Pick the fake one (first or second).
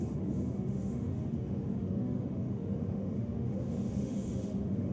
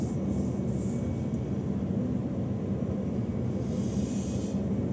first